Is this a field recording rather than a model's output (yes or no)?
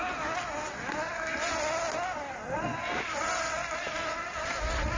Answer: yes